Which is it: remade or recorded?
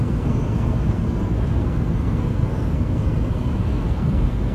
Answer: remade